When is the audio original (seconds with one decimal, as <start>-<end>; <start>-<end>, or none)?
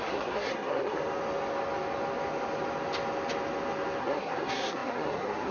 1.0-4.0